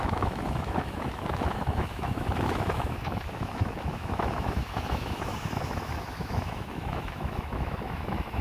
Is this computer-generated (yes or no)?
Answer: yes